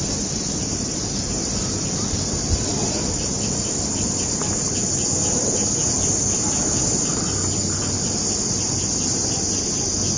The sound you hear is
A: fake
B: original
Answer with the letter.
B